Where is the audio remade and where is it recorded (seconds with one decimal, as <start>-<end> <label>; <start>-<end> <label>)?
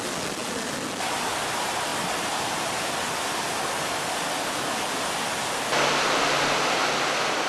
0.0-7.5 recorded